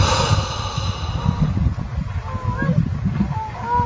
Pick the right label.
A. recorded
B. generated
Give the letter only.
A